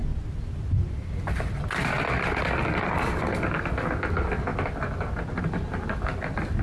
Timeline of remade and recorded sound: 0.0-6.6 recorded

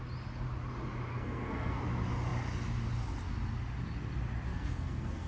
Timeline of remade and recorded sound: 0.0-1.1 recorded; 1.1-1.8 remade; 1.8-4.5 recorded; 4.5-5.3 remade